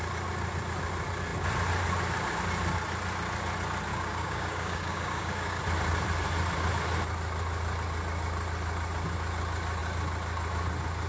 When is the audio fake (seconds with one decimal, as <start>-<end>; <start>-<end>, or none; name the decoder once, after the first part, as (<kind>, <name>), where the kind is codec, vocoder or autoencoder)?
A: 3.9-5.6 (codec, DAC)